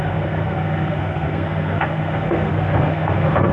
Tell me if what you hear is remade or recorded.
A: remade